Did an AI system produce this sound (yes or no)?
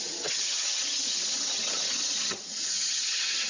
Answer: yes